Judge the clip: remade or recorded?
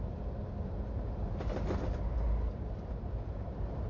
recorded